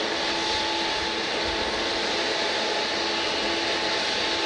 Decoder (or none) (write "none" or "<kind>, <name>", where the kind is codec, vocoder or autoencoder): none